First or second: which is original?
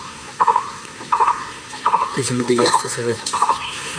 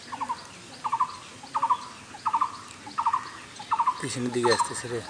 second